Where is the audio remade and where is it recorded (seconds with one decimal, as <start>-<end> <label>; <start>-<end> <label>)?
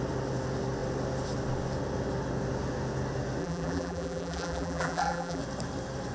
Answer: 0.0-3.4 recorded; 3.4-5.4 remade; 5.4-6.1 recorded